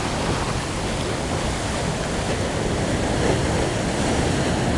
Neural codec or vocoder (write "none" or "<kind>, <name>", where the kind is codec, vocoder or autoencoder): none